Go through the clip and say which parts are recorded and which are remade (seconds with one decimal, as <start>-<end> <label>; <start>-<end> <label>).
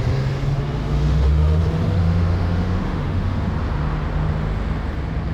0.0-0.8 recorded; 0.8-1.6 remade; 1.6-2.0 recorded; 2.0-3.5 remade; 3.5-5.3 recorded